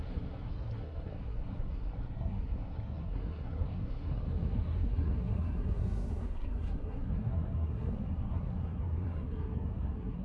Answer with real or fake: fake